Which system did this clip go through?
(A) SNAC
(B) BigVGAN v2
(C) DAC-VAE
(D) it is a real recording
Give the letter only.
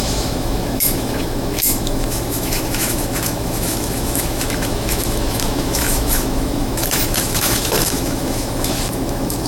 C